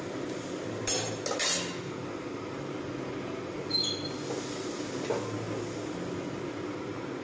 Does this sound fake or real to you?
real